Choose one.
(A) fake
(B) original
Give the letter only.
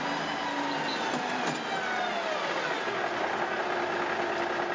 B